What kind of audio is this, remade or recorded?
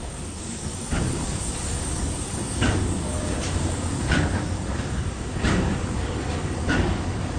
remade